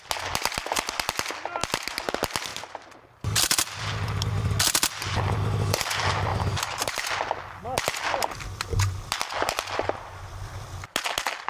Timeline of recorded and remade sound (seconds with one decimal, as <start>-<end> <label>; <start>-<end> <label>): 0.0-6.3 recorded; 6.3-7.1 remade; 7.1-11.5 recorded